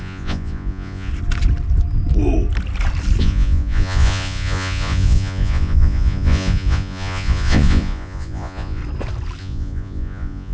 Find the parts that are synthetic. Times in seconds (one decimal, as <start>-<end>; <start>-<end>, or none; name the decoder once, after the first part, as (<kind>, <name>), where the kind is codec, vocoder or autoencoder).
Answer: 0.0-1.1 (vocoder, Vocos); 3.2-8.8; 9.4-10.5